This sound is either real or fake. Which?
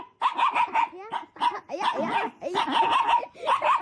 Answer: real